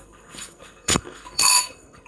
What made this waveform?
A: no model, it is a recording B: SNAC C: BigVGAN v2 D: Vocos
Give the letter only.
B